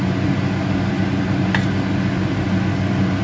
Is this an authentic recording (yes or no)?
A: yes